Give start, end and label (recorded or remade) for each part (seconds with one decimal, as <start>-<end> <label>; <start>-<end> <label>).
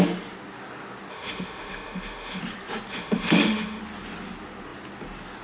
0.0-1.1 recorded; 1.1-2.4 remade; 2.4-2.9 recorded; 2.9-3.8 remade; 3.8-5.4 recorded